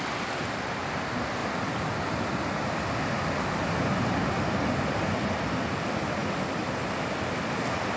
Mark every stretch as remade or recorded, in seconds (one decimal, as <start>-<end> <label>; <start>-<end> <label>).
0.0-8.0 recorded